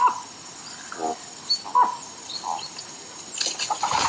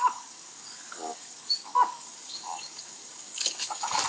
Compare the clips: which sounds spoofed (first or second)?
second